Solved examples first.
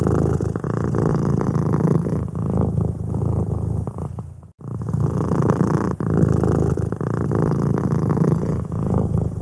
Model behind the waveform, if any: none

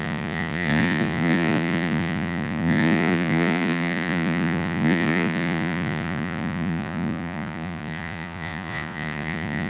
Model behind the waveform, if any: vocoder, Vocos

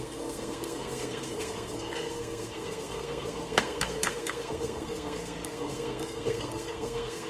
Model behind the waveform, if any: codec, SNAC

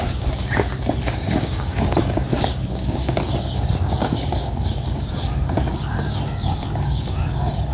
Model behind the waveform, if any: codec, DAC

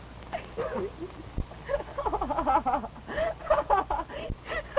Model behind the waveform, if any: none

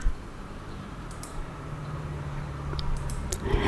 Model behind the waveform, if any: vocoder, BigVGAN v2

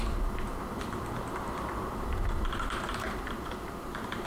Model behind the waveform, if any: vocoder, BigVGAN v2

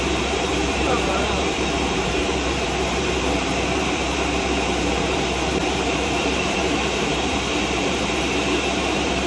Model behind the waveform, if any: vocoder, BigVGAN v2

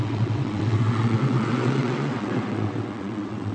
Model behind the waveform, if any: vocoder, WaveNeXt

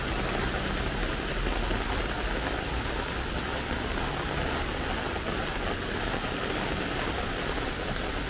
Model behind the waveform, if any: none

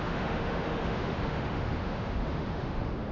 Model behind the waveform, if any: autoencoder, DAC-VAE